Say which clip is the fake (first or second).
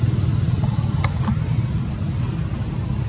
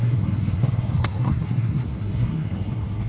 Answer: second